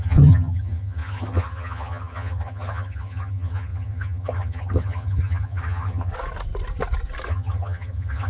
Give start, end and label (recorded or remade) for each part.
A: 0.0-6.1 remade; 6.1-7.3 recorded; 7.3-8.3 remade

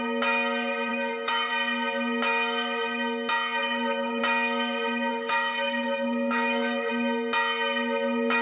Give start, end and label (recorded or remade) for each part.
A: 0.0-0.9 recorded; 0.9-1.5 remade; 1.5-3.6 recorded; 3.6-4.2 remade; 4.2-5.1 recorded; 5.1-6.9 remade; 6.9-8.4 recorded

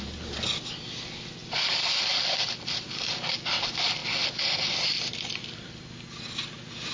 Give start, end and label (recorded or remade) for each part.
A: 0.0-1.4 recorded; 1.4-3.0 remade; 3.0-4.0 recorded; 4.0-6.0 remade; 6.0-6.9 recorded